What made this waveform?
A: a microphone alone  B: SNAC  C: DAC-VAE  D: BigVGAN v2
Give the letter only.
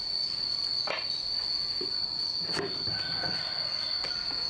A